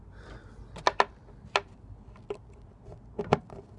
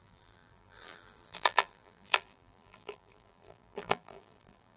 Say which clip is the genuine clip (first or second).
first